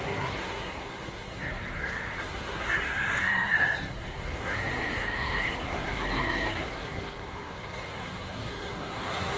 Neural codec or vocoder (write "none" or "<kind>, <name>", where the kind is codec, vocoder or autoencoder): codec, SNAC